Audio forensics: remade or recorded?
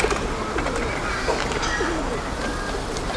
recorded